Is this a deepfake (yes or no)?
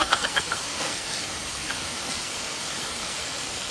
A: yes